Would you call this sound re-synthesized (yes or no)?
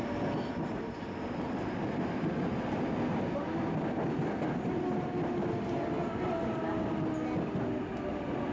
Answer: no